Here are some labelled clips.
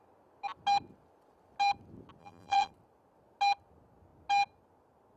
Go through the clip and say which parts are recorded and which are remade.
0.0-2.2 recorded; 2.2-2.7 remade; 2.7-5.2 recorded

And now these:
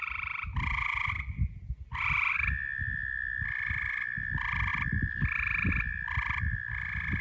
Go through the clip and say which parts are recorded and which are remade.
0.0-7.2 recorded

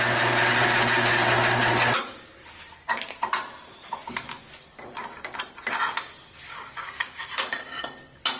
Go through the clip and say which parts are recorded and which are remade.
0.0-6.5 recorded; 6.5-7.2 remade; 7.2-8.4 recorded

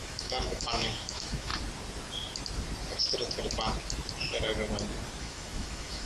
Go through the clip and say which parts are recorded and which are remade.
0.0-1.5 remade; 1.5-5.2 recorded; 5.2-6.1 remade

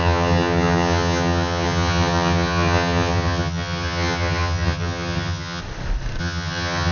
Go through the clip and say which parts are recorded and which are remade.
0.0-5.6 remade; 5.6-6.2 recorded; 6.2-6.9 remade

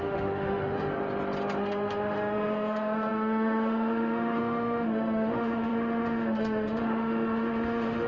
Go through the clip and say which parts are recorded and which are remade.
0.0-0.9 remade; 0.9-1.6 recorded; 1.6-8.1 remade

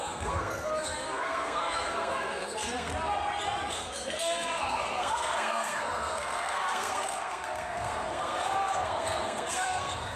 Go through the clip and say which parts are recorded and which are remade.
0.0-2.9 remade; 2.9-3.7 recorded; 3.7-10.2 remade

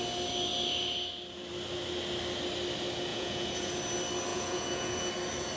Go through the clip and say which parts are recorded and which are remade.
0.0-3.1 recorded; 3.1-3.7 remade; 3.7-4.3 recorded; 4.3-5.1 remade; 5.1-5.6 recorded